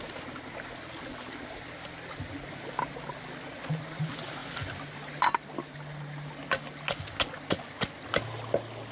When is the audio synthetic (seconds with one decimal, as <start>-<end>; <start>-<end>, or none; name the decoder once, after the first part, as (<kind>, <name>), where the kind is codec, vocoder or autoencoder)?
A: none